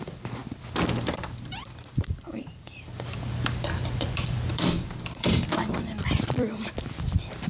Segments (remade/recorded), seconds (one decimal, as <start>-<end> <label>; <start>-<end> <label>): 0.0-0.4 remade; 0.4-0.9 recorded; 0.9-7.5 remade